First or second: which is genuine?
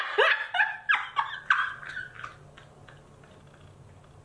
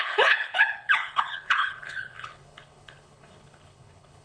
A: first